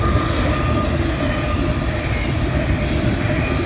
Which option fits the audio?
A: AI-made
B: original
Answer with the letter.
B